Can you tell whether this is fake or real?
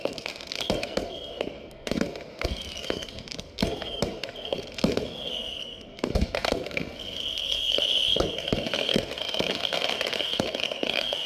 fake